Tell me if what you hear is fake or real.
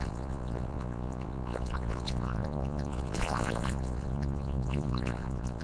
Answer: fake